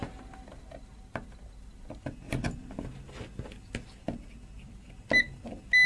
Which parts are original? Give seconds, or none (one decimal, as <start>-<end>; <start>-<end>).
0.0-5.9